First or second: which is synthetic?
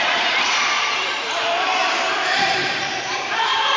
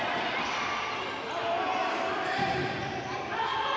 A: first